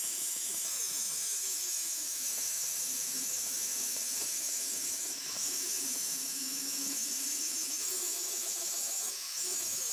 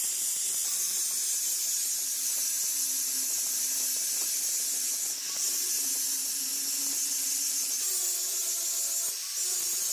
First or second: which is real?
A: second